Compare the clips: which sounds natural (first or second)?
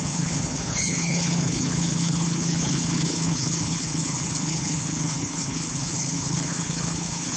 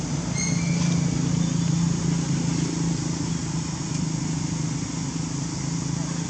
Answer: second